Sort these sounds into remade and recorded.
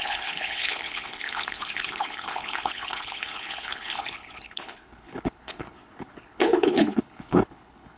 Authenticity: remade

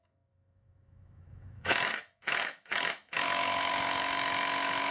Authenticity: remade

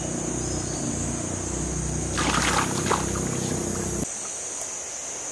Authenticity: recorded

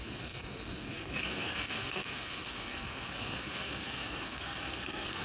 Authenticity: remade